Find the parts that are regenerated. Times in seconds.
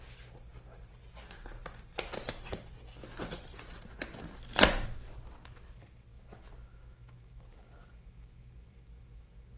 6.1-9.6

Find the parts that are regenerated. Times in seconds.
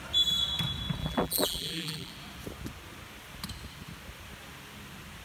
1.0-2.1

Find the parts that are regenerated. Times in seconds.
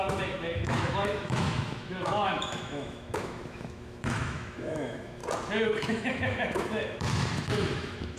0.0-5.2; 5.8-8.2